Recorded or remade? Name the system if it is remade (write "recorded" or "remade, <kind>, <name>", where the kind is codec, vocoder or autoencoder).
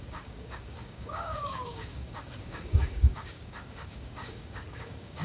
remade, codec, DAC